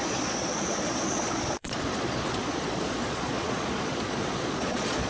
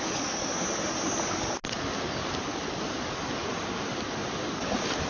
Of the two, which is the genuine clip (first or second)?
second